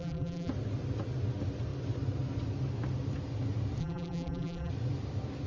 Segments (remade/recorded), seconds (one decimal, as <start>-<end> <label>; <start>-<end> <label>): 0.0-0.5 remade; 0.5-3.8 recorded; 3.8-4.7 remade; 4.7-5.5 recorded